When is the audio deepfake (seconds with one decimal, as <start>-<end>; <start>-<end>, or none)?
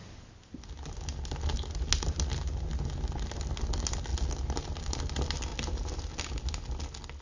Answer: 5.5-6.0